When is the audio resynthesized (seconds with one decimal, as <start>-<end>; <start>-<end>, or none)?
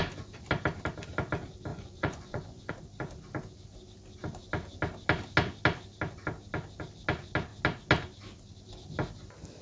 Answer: 1.7-2.7